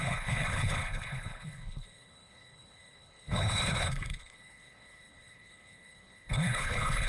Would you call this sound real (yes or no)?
no